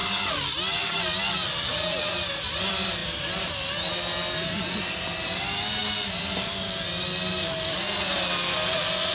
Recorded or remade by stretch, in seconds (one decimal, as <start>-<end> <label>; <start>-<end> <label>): 0.0-9.1 recorded